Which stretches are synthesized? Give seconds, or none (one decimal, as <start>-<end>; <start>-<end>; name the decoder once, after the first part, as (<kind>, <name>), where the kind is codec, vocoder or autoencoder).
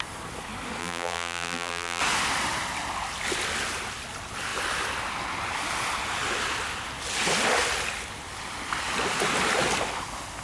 0.8-2.0 (vocoder, BigVGAN v2)